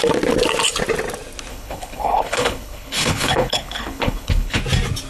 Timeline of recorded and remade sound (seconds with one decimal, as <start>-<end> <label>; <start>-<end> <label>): 0.0-1.5 recorded; 1.5-4.6 remade; 4.6-5.1 recorded